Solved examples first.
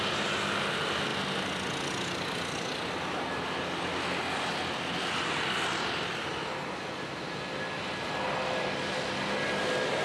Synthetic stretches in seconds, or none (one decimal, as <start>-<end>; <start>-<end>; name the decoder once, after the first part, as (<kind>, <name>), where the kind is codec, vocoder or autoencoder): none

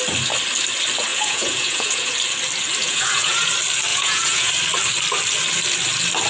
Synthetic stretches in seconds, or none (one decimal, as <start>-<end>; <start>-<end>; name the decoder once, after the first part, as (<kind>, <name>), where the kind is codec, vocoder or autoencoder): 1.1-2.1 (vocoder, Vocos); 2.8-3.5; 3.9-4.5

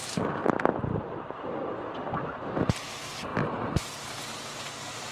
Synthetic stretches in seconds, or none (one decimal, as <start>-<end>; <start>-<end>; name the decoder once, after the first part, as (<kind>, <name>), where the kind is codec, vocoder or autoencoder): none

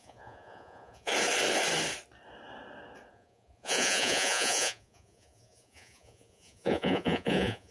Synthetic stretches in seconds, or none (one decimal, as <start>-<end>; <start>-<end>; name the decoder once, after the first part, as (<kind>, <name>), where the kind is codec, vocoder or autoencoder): 0.0-1.1 (vocoder, Vocos); 3.1-7.7